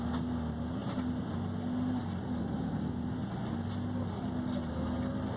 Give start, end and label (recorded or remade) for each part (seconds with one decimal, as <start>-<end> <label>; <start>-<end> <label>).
0.0-5.4 recorded